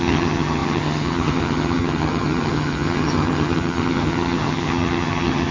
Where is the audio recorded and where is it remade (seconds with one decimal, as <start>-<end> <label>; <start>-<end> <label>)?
0.0-5.5 remade

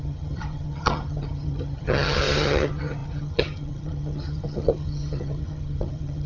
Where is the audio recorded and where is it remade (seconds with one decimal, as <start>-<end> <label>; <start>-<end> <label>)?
0.0-6.3 remade

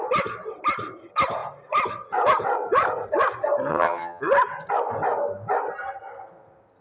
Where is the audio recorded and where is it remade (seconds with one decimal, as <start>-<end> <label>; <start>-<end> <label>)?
0.0-3.7 recorded; 3.7-4.2 remade; 4.2-6.8 recorded

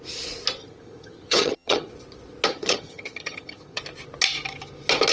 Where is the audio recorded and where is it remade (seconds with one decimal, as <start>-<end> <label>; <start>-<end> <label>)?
0.0-0.6 recorded; 0.6-1.9 remade; 1.9-2.5 recorded; 2.5-3.8 remade; 3.8-5.1 recorded

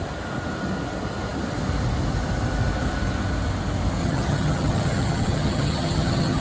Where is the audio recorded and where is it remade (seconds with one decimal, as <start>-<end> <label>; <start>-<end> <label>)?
0.0-4.0 recorded; 4.0-6.4 remade

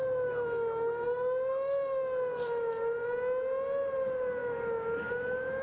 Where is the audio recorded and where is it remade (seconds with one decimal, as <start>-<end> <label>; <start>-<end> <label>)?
0.0-5.6 recorded